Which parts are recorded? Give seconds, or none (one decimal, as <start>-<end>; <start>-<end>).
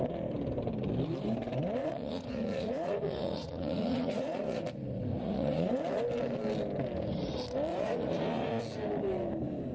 0.0-1.8; 4.6-5.1; 6.0-7.7; 8.6-9.7